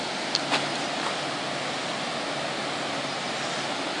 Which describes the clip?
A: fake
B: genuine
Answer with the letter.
B